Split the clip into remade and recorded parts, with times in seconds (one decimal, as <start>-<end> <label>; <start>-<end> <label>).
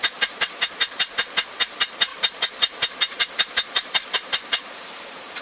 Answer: 0.0-2.1 recorded; 2.1-5.4 remade